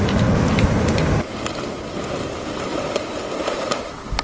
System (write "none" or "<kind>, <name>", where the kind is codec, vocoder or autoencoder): none